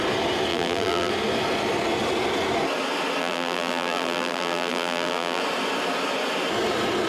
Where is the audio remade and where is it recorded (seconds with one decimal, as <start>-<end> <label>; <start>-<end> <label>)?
0.0-0.5 recorded; 0.5-1.1 remade; 1.1-3.2 recorded; 3.2-5.4 remade; 5.4-7.1 recorded